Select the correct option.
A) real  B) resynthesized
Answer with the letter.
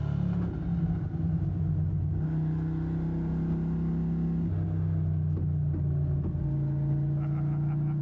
A